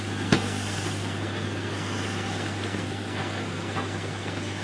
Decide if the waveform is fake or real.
fake